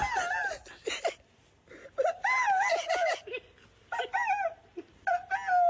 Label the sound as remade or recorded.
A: recorded